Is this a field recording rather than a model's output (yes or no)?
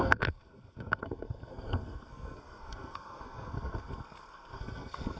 no